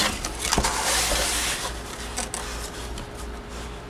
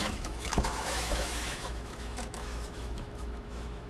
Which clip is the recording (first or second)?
first